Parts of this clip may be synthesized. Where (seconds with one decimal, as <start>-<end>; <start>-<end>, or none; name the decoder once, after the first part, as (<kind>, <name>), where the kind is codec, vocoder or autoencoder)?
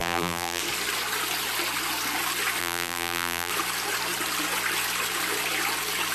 0.0-0.6 (vocoder, BigVGAN v2); 2.6-3.5